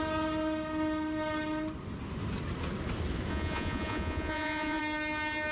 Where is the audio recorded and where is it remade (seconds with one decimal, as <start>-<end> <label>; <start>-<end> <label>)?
0.0-3.3 recorded; 3.3-4.8 remade; 4.8-5.5 recorded